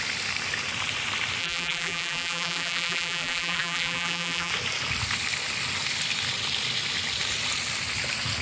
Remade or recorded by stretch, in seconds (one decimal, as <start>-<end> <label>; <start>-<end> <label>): 0.0-1.4 recorded; 1.4-4.5 remade; 4.5-8.4 recorded